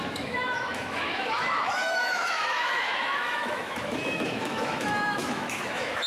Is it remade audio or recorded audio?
remade